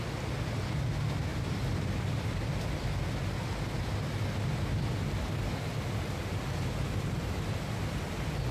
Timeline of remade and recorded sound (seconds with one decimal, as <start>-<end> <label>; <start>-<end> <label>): 0.0-8.5 recorded